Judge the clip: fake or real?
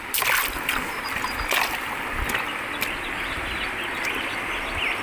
real